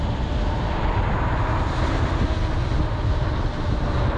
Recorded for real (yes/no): yes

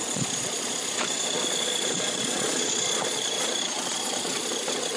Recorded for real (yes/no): no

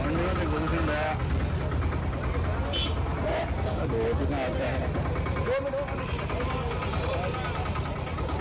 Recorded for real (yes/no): yes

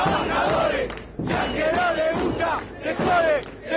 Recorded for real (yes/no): yes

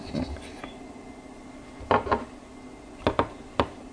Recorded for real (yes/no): yes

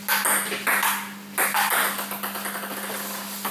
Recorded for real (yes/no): yes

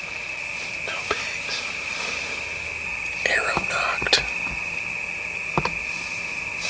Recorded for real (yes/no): yes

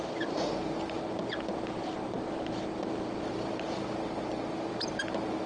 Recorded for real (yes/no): no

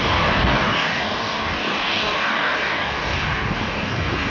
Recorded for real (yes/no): no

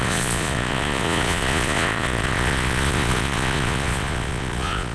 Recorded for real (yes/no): no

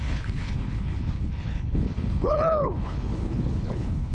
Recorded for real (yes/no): no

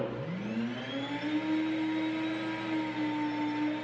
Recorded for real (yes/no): yes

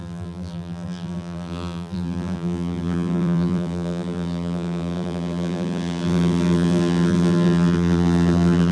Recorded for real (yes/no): no